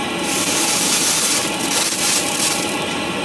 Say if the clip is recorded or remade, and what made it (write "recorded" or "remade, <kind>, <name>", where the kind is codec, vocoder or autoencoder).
recorded